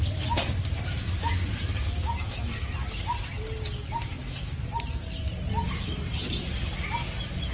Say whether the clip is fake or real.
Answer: real